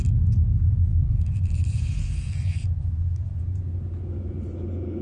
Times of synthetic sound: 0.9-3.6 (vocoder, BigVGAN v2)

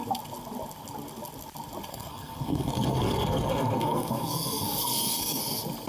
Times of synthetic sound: 1.9-5.4 (codec, SNAC)

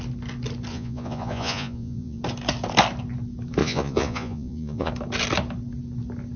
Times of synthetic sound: 0.7-2.2 (vocoder, Vocos); 3.6-4.9

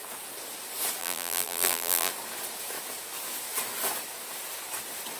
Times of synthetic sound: 1.0-2.1 (vocoder, BigVGAN v2)